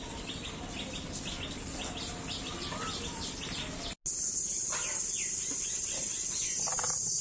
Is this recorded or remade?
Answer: recorded